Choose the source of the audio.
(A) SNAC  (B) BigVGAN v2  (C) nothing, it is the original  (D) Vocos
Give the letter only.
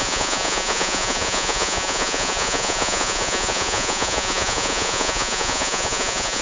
D